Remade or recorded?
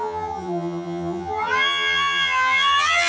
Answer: remade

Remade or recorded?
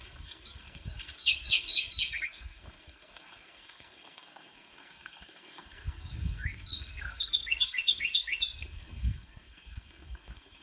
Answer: remade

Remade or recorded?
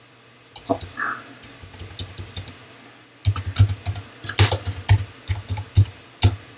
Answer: recorded